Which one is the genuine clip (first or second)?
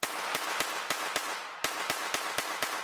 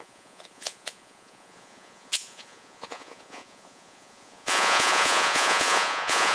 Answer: first